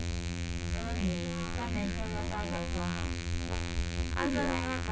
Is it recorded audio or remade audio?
remade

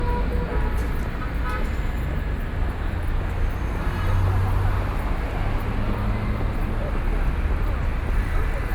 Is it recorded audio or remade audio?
recorded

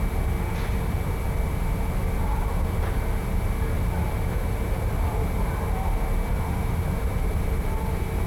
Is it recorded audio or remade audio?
recorded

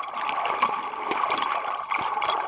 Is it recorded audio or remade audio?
recorded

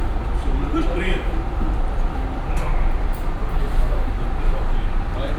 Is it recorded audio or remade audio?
remade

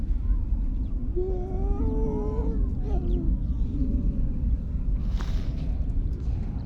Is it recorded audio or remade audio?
recorded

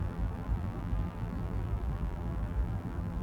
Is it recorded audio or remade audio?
remade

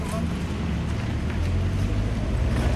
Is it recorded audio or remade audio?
recorded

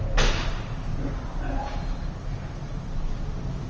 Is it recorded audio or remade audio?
recorded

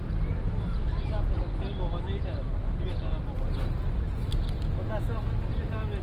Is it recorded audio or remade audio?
recorded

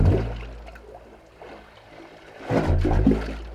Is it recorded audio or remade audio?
recorded